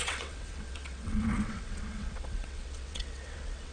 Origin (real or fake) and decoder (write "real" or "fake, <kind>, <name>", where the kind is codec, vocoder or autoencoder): fake, vocoder, WaveNeXt